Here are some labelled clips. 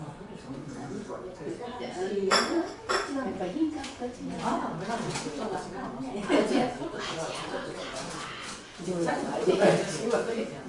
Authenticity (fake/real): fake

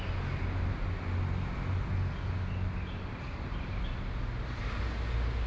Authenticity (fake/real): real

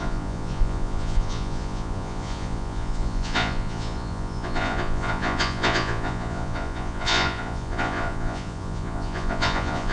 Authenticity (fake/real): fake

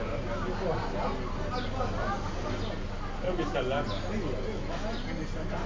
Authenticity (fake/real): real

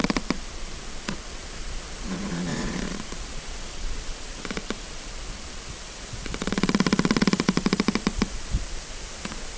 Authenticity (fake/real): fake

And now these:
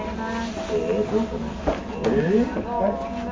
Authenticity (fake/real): real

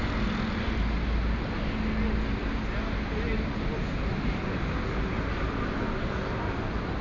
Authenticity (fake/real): real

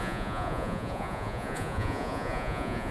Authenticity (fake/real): fake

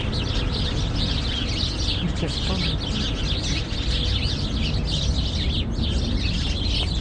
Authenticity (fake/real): real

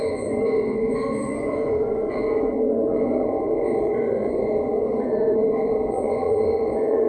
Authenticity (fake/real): fake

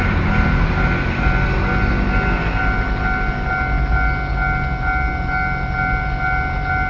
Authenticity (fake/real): real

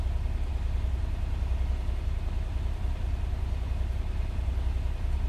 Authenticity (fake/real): real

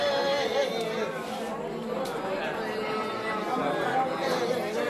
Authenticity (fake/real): real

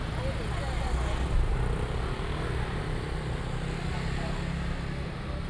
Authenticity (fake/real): real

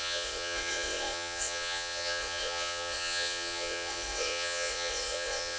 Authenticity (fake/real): fake